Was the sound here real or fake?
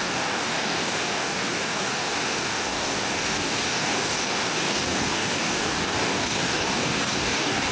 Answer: fake